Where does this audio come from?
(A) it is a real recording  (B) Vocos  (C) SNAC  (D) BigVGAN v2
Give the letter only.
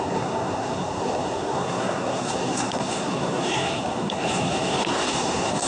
C